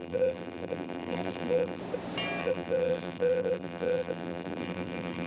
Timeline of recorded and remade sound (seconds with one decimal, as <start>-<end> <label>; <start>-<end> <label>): 0.0-1.8 remade; 1.8-2.4 recorded; 2.4-5.3 remade